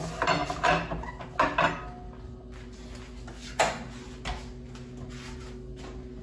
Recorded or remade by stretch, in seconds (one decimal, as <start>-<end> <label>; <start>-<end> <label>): 0.0-6.2 recorded